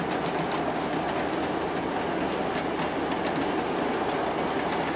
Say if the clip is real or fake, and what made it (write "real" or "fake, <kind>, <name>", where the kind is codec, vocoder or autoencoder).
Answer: real